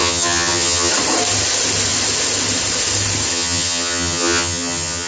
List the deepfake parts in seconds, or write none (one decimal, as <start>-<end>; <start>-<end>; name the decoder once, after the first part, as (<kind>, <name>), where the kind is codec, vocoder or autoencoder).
0.0-0.9 (vocoder, HiFi-GAN); 3.3-5.1